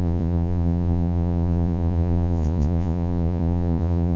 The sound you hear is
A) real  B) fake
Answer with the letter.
B